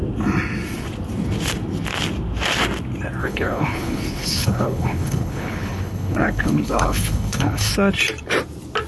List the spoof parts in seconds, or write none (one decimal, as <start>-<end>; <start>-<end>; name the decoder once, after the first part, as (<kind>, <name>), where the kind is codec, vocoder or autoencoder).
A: 3.2-7.7 (codec, HILCodec)